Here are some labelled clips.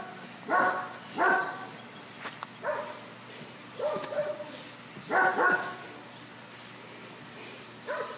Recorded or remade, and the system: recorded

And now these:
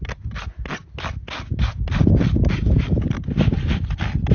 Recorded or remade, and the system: recorded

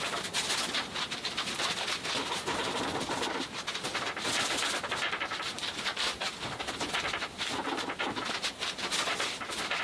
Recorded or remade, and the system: recorded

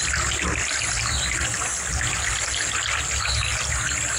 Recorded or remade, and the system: recorded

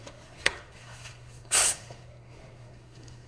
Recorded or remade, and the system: remade, codec, SNAC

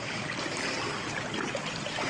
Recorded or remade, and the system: remade, vocoder, BigVGAN v2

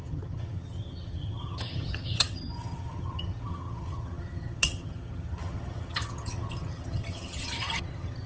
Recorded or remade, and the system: remade, vocoder, HiFi-GAN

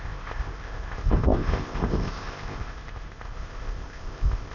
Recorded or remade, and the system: remade, codec, ZipCodec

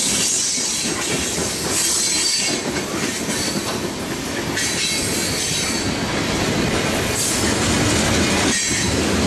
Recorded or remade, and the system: recorded